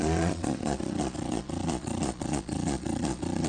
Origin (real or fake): fake